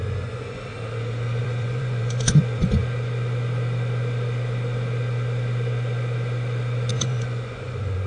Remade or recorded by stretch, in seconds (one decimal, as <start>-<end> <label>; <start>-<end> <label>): 0.0-0.7 remade; 0.7-1.4 recorded; 1.4-2.8 remade; 2.8-6.9 recorded; 6.9-8.1 remade